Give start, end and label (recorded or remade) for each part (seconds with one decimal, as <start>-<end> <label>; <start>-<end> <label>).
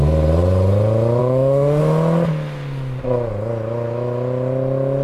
0.0-1.2 recorded; 1.2-1.8 remade; 1.8-5.0 recorded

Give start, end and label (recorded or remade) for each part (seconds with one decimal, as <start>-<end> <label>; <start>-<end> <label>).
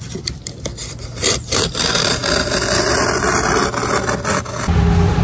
0.0-0.8 recorded; 0.8-1.7 remade; 1.7-5.2 recorded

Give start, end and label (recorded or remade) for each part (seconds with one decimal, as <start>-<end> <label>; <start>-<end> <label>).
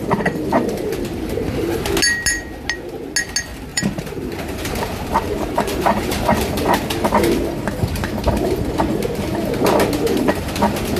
0.0-3.7 recorded; 3.7-6.4 remade; 6.4-11.0 recorded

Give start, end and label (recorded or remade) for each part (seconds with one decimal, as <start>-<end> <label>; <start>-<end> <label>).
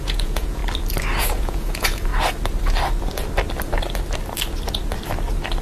0.0-0.6 remade; 0.6-1.2 recorded; 1.2-2.1 remade; 2.1-5.6 recorded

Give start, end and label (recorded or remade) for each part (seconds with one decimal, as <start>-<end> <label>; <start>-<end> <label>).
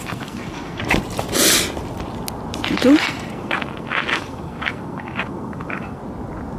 0.0-0.8 remade; 0.8-3.0 recorded; 3.0-6.0 remade; 6.0-6.6 recorded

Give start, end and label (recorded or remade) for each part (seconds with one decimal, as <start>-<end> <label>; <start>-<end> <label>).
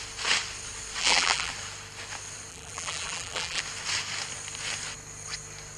0.0-1.0 recorded; 1.0-1.5 remade; 1.5-2.5 recorded; 2.5-3.6 remade; 3.6-5.8 recorded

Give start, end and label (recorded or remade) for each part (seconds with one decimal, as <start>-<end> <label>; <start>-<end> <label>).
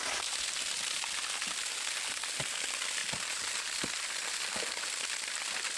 0.0-3.0 recorded; 3.0-3.6 remade; 3.6-5.8 recorded